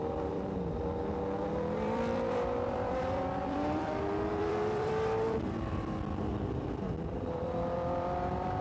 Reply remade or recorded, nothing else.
remade